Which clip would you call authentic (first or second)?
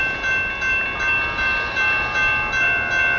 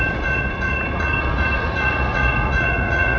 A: first